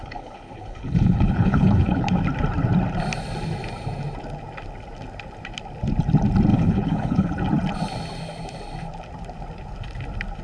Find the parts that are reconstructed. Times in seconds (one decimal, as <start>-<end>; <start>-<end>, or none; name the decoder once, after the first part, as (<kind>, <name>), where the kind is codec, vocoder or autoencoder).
0.0-2.2 (codec, HILCodec); 6.5-7.3